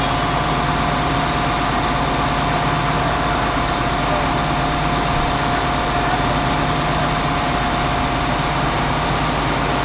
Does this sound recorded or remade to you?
recorded